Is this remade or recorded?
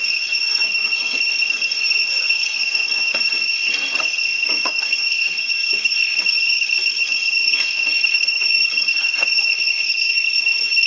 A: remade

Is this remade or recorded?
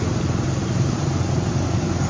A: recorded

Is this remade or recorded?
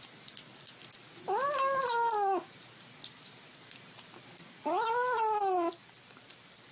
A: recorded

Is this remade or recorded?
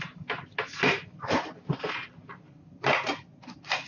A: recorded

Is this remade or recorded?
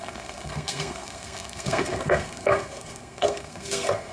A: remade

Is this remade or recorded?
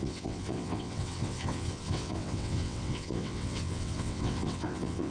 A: remade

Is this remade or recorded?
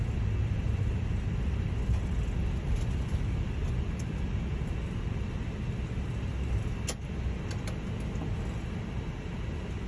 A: recorded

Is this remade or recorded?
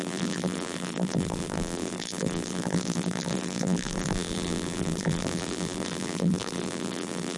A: remade